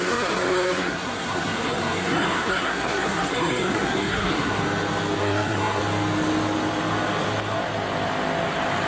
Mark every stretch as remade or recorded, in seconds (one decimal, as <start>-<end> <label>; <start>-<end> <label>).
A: 0.0-4.6 remade; 4.6-5.2 recorded; 5.2-5.8 remade; 5.8-8.9 recorded

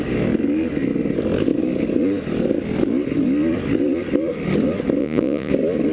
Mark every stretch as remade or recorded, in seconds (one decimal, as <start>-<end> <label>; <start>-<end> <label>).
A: 0.0-5.0 recorded; 5.0-5.5 remade; 5.5-5.9 recorded

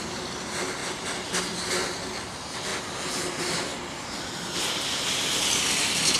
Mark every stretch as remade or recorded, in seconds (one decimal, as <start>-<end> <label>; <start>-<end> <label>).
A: 0.0-6.2 recorded